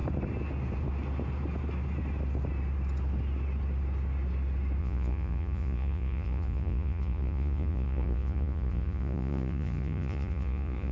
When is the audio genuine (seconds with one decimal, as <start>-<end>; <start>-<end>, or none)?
0.0-4.8